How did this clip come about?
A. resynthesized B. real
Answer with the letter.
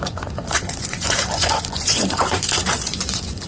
A